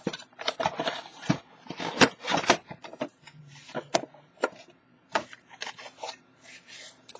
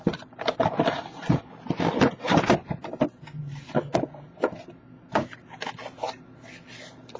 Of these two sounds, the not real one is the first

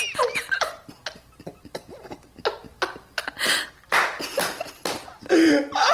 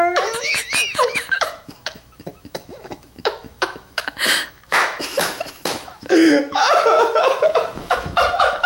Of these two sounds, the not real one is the second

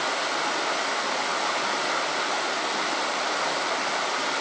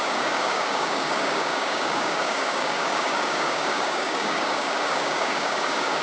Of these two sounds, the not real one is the second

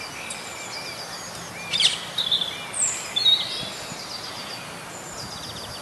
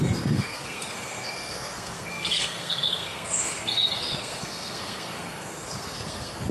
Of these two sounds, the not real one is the second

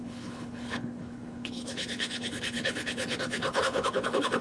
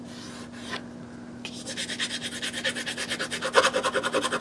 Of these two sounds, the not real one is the first